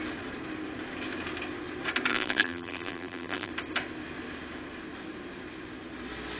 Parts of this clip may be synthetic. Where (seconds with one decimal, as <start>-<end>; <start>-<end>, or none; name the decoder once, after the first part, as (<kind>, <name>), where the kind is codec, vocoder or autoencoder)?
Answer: 2.1-3.5 (vocoder, BigVGAN v2)